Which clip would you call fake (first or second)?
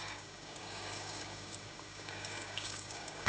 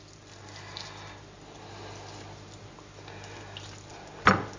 first